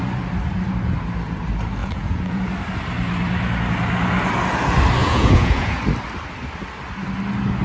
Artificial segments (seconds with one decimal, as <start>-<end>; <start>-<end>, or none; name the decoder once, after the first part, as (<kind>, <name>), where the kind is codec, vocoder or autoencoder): 1.8-2.4 (vocoder, Vocos); 5.0-5.8